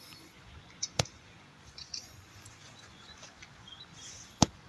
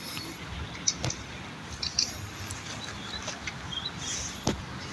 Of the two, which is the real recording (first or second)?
second